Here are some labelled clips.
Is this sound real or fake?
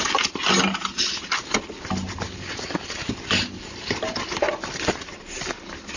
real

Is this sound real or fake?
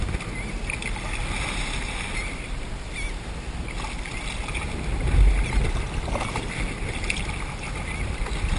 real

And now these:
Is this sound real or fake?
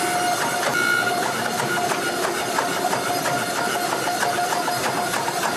real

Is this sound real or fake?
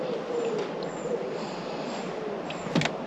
real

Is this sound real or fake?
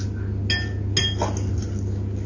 real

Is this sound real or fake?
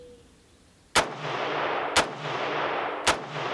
real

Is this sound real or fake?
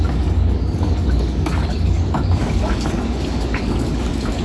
fake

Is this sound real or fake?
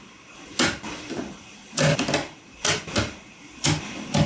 fake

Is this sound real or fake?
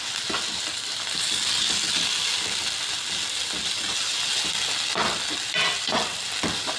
real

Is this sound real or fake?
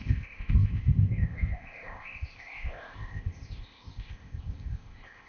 fake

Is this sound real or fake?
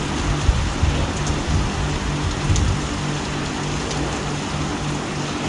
real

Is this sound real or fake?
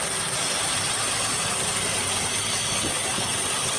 real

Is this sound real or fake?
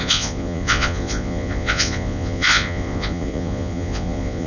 fake